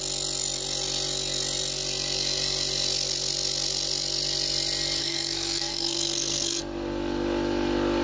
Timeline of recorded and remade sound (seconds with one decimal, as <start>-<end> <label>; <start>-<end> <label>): 0.0-5.0 recorded; 5.0-6.6 remade; 6.6-8.0 recorded